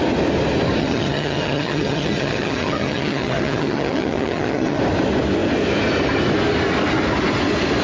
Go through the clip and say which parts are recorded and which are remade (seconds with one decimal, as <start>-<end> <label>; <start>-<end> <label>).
0.0-0.8 recorded; 0.8-4.8 remade; 4.8-7.8 recorded